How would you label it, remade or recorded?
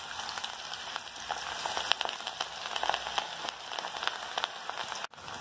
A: recorded